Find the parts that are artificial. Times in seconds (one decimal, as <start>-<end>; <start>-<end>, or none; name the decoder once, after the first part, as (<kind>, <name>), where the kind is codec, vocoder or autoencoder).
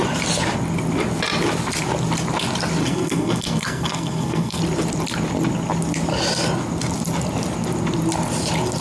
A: 2.8-4.6 (codec, SNAC)